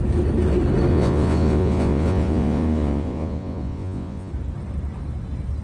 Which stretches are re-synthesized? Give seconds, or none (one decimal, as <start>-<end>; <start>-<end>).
0.9-4.3